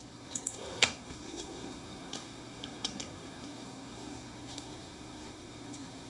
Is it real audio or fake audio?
fake